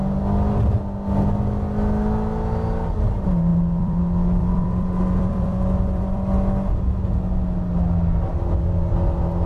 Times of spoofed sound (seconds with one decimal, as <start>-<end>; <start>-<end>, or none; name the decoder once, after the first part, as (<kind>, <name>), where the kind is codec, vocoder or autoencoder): 3.5-4.0 (vocoder, BigVGAN v2); 4.4-6.2